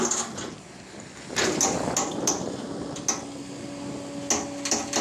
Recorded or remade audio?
recorded